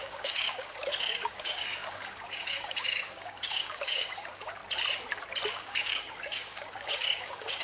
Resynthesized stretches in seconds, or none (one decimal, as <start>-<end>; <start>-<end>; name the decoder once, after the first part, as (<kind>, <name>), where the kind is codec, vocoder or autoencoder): 0.0-4.6 (codec, DAC); 5.5-7.6